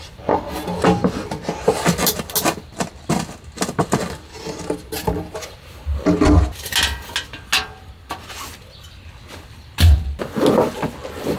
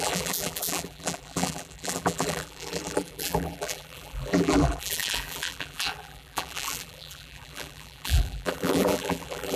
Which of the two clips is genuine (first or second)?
first